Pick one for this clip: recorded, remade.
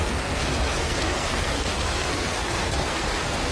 remade